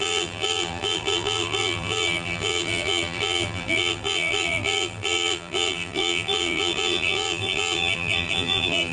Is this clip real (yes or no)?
no